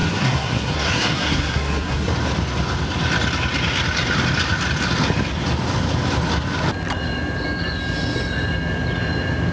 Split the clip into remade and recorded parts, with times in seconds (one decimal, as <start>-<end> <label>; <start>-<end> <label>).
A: 0.0-2.1 remade; 2.1-9.5 recorded